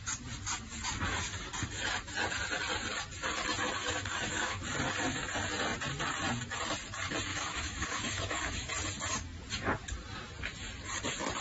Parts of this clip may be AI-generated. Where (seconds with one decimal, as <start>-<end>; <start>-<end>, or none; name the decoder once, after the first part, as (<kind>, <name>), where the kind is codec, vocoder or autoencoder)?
3.8-4.6 (autoencoder, DAC-VAE); 7.3-8.7